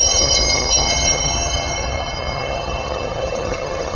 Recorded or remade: remade